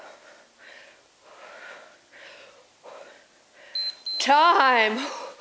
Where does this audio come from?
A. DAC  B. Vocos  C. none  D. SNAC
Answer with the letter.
C